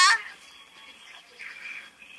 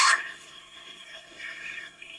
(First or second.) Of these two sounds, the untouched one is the first